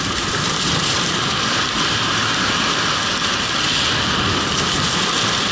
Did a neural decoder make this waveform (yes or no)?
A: no